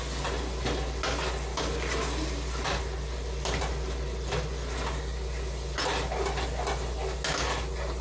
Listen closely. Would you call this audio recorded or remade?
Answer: recorded